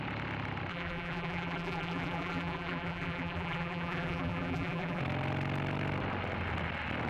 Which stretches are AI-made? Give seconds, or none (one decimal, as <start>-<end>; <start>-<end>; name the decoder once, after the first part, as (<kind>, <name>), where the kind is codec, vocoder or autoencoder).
0.7-5.0 (vocoder, BigVGAN v2)